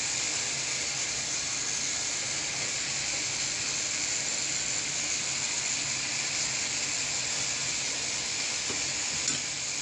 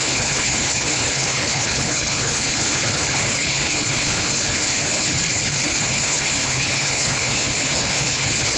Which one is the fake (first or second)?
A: second